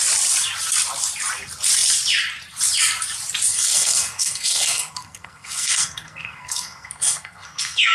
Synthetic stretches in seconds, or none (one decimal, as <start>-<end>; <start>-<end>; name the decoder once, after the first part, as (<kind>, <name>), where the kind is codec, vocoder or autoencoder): 3.5-7.9 (codec, SNAC)